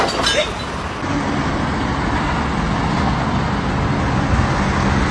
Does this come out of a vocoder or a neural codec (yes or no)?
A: no